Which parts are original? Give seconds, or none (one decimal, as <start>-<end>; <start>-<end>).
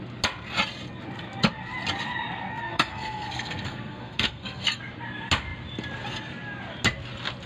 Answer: 0.0-2.5; 4.8-7.5